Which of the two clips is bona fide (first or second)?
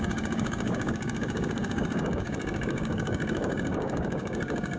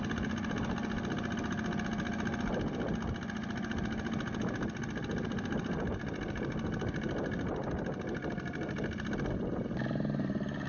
second